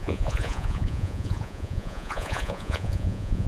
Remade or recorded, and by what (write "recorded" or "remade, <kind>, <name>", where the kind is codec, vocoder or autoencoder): remade, vocoder, Vocos